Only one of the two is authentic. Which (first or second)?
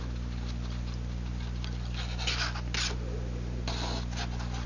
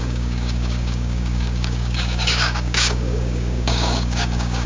first